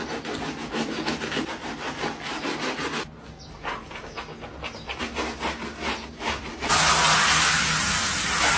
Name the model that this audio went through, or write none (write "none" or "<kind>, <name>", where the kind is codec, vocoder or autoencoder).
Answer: none